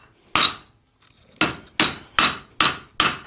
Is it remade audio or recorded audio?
recorded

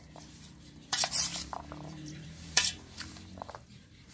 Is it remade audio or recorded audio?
remade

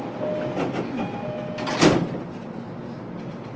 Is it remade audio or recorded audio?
recorded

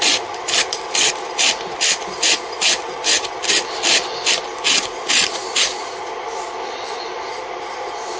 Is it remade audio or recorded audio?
remade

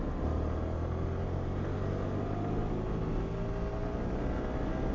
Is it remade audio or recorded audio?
recorded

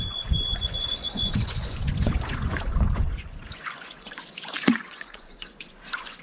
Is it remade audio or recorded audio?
remade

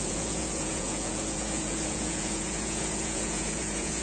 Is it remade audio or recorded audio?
remade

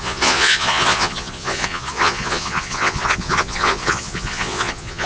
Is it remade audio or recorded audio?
remade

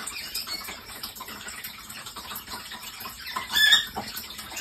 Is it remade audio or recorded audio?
remade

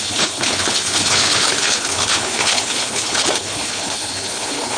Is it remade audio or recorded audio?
remade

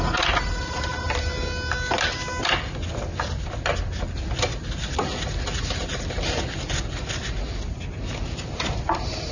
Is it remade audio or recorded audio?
recorded